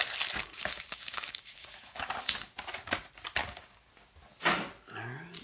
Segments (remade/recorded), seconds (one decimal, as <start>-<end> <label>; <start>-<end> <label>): 0.0-0.4 recorded; 0.4-2.5 remade; 2.5-3.4 recorded; 3.4-3.9 remade; 3.9-5.4 recorded